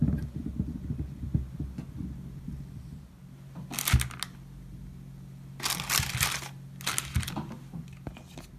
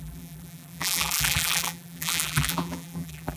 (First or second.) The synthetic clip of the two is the second